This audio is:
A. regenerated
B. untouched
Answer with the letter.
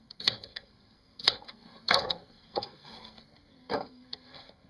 A